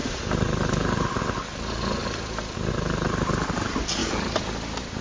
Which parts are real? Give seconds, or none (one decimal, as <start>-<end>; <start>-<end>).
1.2-2.0; 2.7-4.0